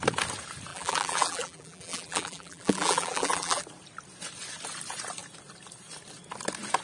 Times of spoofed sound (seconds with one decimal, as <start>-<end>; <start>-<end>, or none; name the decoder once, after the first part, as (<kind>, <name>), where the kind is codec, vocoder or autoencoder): 0.7-3.6 (vocoder, BigVGAN v2)